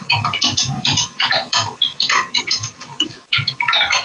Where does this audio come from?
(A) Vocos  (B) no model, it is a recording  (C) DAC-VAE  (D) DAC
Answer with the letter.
D